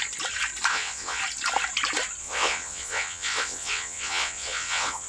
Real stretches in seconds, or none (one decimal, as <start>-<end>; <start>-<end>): 0.0-0.7; 1.2-2.2

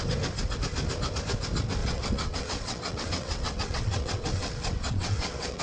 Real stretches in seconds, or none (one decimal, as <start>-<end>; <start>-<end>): 0.0-1.8

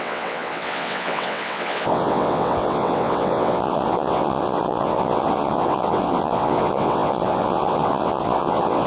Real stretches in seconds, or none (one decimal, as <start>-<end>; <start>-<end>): none

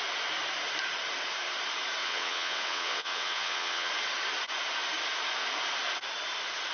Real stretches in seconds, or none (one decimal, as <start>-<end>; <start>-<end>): 0.0-2.0; 3.9-6.7